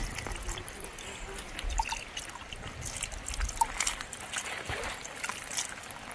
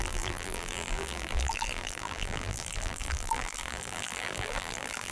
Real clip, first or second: first